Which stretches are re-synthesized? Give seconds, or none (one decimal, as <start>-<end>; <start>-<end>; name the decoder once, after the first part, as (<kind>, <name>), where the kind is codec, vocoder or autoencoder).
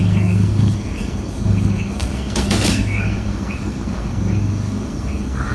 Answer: 0.0-5.5 (codec, SNAC)